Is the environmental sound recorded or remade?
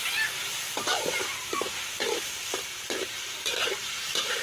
remade